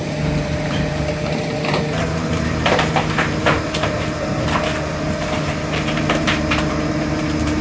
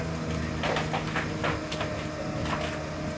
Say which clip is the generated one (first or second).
first